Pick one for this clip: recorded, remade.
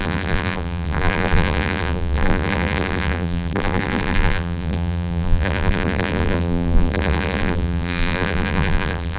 remade